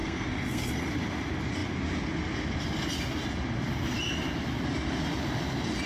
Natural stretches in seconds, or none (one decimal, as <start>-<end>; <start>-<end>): 0.8-5.9